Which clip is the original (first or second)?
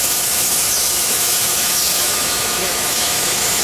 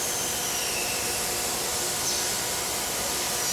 second